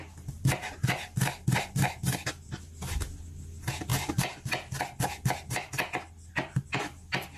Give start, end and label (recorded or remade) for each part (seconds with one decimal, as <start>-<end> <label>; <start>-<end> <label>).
0.0-7.4 recorded